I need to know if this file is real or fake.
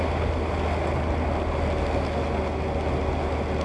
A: real